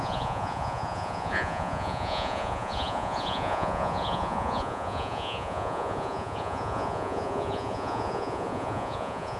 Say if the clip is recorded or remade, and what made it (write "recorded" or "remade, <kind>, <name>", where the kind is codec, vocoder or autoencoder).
remade, vocoder, Vocos